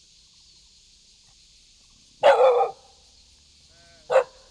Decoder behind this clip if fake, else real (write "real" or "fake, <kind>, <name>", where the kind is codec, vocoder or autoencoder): real